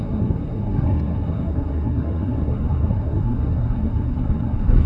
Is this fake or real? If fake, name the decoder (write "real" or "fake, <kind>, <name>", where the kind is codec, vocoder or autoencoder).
fake, codec, SNAC